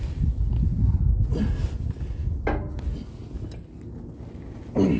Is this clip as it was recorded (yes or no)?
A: yes